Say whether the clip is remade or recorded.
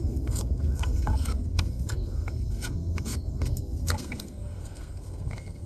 remade